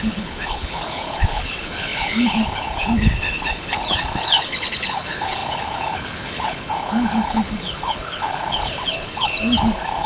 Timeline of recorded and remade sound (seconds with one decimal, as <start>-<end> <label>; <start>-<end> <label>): 0.0-10.1 remade